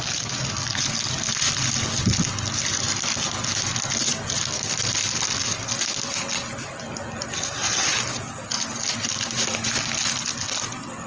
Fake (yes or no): no